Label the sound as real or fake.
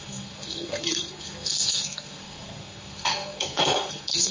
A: fake